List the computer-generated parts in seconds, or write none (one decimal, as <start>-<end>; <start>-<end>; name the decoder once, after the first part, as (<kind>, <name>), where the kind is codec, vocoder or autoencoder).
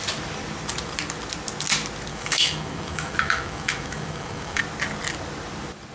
2.1-4.6 (autoencoder, DAC-VAE)